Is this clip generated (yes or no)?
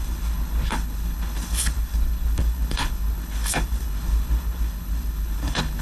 yes